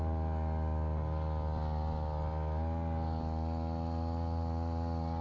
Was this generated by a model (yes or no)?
no